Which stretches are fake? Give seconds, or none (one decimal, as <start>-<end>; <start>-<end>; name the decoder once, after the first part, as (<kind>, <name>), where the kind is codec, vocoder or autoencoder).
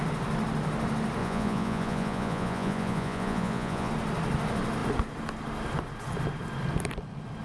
1.2-3.9 (vocoder, Vocos)